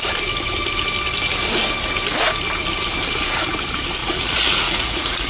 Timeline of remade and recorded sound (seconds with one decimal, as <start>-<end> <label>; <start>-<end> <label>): 0.0-4.0 recorded; 4.0-5.3 remade